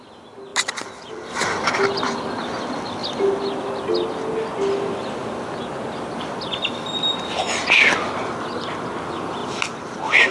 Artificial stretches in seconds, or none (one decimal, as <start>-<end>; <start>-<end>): 0.5-1.8; 9.4-10.3